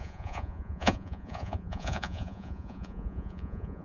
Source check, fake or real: fake